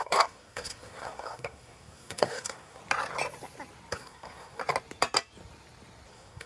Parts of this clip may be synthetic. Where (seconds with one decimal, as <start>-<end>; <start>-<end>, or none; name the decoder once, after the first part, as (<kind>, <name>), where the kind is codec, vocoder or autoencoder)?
0.0-2.8 (codec, SNAC); 3.9-4.6; 6.1-6.5